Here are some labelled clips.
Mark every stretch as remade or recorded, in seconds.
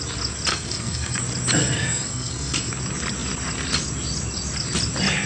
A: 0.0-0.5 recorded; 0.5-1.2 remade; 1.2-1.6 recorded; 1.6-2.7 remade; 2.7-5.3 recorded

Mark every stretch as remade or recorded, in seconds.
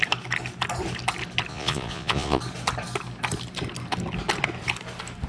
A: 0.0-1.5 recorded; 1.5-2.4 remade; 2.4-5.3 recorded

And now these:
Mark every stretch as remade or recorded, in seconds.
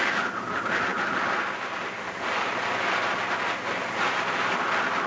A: 0.0-5.1 recorded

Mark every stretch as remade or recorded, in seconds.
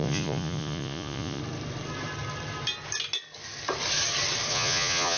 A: 0.0-1.4 remade; 1.4-4.5 recorded; 4.5-5.2 remade